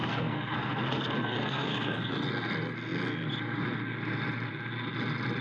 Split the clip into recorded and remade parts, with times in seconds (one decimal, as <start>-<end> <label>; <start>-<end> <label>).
0.0-2.1 remade; 2.1-5.4 recorded